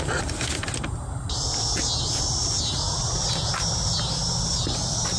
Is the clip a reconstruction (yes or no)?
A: no